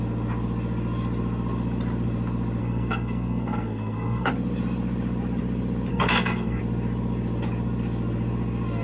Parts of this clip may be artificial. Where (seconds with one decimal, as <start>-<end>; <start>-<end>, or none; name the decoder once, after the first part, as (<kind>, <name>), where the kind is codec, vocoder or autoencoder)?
2.6-4.3 (codec, SNAC); 5.9-6.6